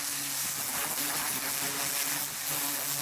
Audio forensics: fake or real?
real